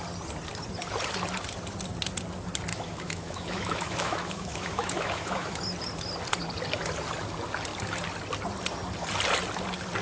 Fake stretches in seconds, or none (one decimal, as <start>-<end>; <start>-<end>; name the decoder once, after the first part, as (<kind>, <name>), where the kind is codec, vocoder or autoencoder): 2.7-5.6 (autoencoder, DAC-VAE)